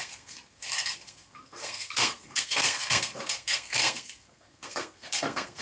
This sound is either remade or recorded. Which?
remade